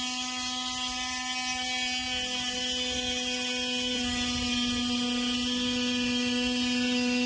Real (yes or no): yes